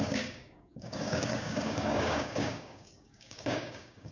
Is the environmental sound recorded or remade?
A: remade